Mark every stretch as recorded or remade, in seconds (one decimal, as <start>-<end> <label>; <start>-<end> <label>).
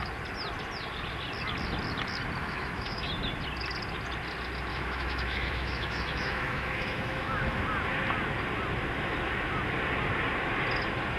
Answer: 0.0-2.4 recorded; 2.4-3.1 remade; 3.1-4.7 recorded; 4.7-7.6 remade; 7.6-11.2 recorded